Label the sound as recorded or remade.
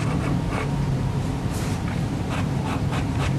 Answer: remade